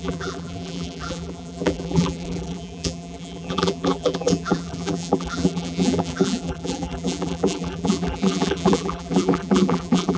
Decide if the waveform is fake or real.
fake